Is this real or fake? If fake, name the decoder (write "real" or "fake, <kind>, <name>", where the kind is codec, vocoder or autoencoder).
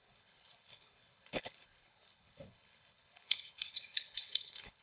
fake, codec, HILCodec